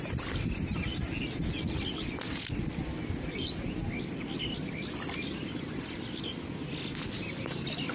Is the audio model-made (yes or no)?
no